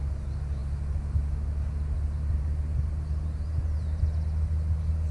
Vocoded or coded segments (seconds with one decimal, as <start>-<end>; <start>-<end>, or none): none